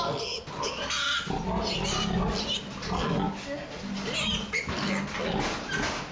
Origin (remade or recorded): recorded